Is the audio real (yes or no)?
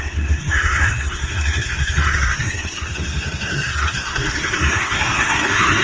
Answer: no